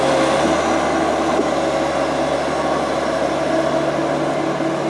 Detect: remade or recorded recorded